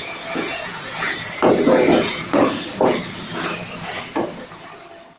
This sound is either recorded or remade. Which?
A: remade